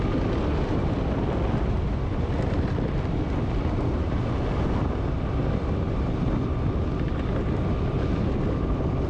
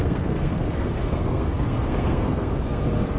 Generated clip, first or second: second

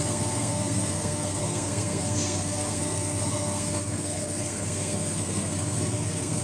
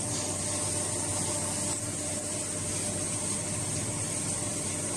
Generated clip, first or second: first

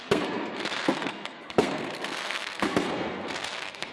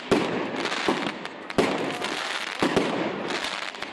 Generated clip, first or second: first